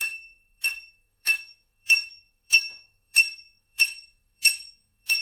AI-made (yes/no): yes